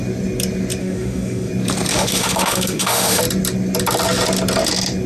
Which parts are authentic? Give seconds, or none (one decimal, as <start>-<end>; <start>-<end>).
0.0-0.8; 1.5-1.9; 3.2-5.1